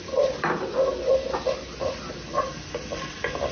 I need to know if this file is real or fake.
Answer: real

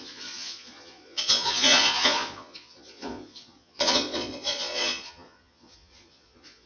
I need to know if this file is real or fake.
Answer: fake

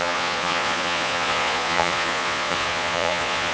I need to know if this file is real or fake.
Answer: fake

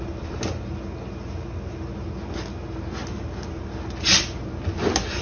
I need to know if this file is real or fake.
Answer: real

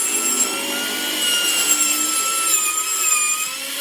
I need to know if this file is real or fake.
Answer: real